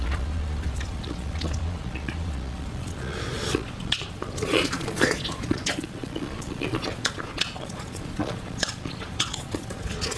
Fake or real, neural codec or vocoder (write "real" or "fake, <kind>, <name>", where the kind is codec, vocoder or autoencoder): fake, vocoder, Vocos